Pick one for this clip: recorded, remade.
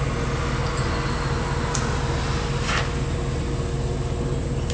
recorded